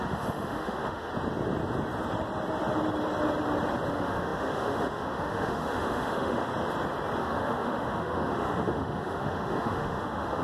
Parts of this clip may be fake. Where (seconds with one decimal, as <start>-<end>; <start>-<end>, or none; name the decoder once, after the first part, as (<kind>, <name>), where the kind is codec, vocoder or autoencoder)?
0.0-1.1 (autoencoder, DAC-VAE); 3.9-6.5; 7.2-10.4